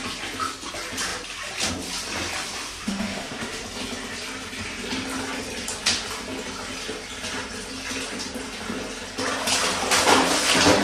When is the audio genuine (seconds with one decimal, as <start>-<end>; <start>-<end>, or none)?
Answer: 0.0-2.7; 3.6-10.8

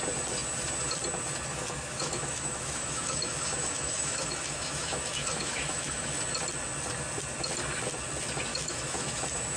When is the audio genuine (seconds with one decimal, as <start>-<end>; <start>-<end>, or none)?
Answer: 0.0-1.5; 6.1-8.5; 9.2-9.6

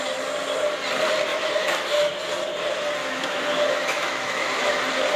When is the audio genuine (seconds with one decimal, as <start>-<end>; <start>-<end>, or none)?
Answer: 0.0-1.3; 2.1-3.0; 4.8-5.2

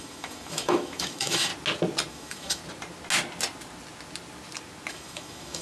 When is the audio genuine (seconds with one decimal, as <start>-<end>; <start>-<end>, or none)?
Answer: 1.5-2.1; 2.6-4.9

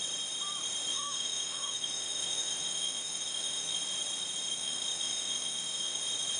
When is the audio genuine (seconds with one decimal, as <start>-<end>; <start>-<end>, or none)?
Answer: 0.0-0.9; 3.8-4.5; 6.0-6.4

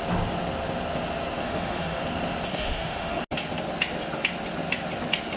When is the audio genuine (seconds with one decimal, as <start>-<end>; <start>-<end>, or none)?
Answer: 0.0-1.4; 2.0-2.5; 3.2-5.4

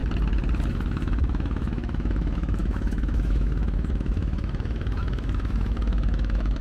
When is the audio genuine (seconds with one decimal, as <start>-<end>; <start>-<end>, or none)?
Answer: 0.0-0.7

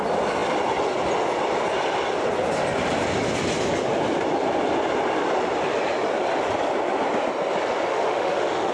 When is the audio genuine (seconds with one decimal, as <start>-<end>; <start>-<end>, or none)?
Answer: 0.0-7.9